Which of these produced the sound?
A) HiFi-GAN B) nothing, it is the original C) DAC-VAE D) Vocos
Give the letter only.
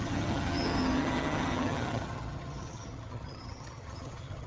A